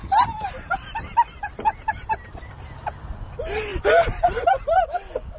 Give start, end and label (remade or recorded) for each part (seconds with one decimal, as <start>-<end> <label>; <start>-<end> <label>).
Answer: 0.0-2.5 remade; 2.5-3.7 recorded; 3.7-4.7 remade; 4.7-5.4 recorded